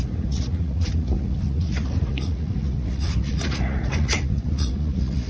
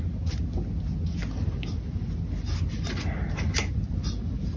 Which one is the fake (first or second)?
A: first